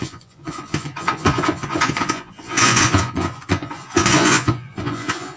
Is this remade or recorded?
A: remade